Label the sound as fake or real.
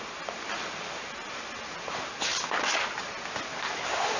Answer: real